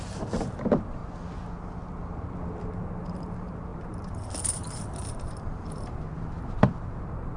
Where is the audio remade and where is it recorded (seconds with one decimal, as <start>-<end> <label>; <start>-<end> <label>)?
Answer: 0.0-1.0 remade; 1.0-2.7 recorded; 2.7-7.4 remade